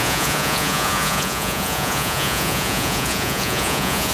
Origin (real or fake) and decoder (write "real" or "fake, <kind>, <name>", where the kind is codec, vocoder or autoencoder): fake, vocoder, Vocos